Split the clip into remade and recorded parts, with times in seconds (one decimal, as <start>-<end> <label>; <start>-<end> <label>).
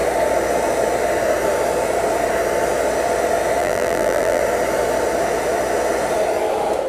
0.0-3.6 recorded; 3.6-4.4 remade; 4.4-6.9 recorded